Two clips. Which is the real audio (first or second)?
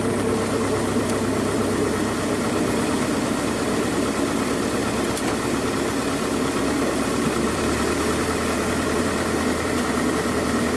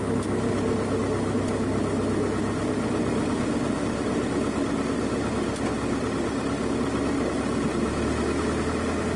second